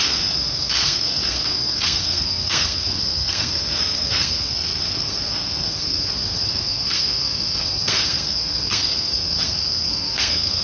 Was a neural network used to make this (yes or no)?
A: yes